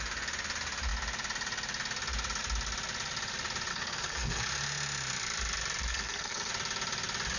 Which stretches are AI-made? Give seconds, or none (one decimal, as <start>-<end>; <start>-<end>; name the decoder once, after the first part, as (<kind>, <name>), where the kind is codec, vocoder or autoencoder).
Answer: 3.7-4.4 (codec, SNAC); 5.9-6.5